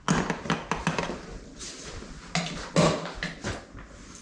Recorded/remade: recorded